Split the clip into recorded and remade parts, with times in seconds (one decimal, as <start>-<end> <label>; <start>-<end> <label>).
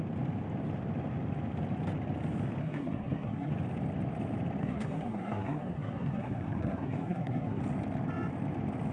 0.0-2.6 recorded; 2.6-3.5 remade; 3.5-4.6 recorded; 4.6-7.6 remade; 7.6-8.9 recorded